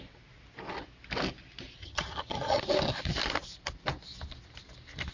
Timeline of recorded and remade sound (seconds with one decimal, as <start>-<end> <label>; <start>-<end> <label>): 0.0-1.8 recorded; 1.8-2.6 remade; 2.6-5.1 recorded